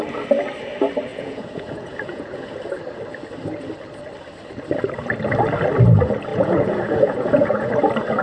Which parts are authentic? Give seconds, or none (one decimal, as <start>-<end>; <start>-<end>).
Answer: 0.0-1.1; 2.6-6.3; 7.7-8.2